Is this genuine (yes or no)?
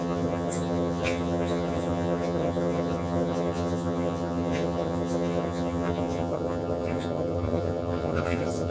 no